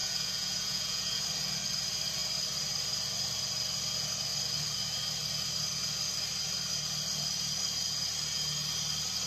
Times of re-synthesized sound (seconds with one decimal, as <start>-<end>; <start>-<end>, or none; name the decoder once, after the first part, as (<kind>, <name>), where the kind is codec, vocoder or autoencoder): 0.0-1.2 (vocoder, Vocos)